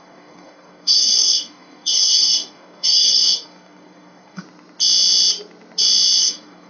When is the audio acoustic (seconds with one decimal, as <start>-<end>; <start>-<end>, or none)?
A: 4.4-6.2